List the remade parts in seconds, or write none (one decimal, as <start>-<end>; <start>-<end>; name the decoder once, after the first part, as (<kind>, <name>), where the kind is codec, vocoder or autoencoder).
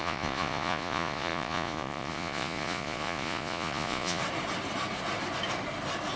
0.0-4.2 (vocoder, Vocos)